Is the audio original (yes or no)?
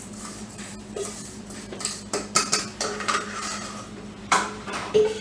no